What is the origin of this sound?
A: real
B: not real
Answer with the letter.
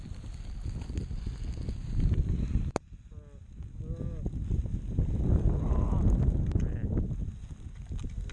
A